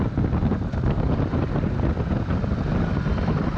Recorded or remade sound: recorded